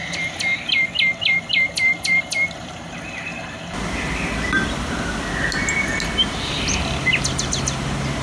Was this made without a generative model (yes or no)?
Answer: yes